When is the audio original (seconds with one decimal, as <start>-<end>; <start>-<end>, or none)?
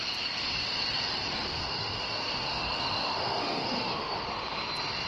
0.0-1.5; 4.2-5.1